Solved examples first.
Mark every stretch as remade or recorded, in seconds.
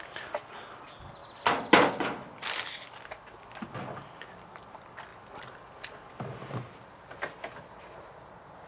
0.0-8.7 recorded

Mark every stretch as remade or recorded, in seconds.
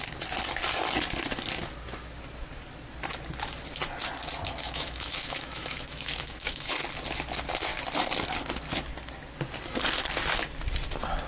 0.0-4.6 recorded; 4.6-6.7 remade; 6.7-11.3 recorded